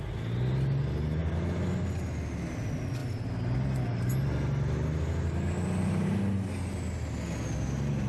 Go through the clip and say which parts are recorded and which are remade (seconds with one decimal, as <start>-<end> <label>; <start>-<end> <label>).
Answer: 0.0-8.1 recorded